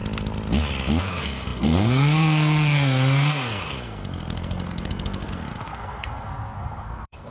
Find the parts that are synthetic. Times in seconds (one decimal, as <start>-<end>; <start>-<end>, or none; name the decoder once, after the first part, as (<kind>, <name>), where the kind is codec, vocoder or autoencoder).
1.0-7.3 (codec, SNAC)